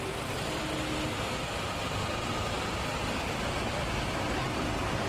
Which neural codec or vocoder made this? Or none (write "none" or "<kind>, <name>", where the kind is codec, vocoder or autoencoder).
none